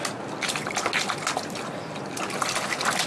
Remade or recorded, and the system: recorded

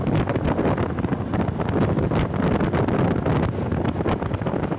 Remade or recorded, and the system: recorded